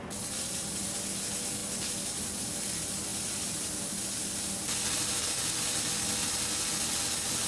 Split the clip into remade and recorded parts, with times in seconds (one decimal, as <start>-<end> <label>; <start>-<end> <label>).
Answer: 0.0-7.5 recorded